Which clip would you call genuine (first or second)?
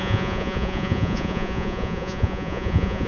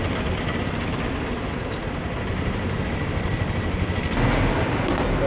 second